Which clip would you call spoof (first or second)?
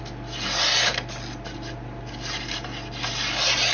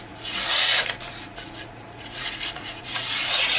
second